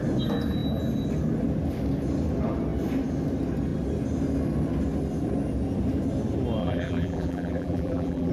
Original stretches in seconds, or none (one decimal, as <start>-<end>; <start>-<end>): 0.0-6.6